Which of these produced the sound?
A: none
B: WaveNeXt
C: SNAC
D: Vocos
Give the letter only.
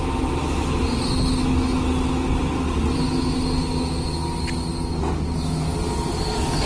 A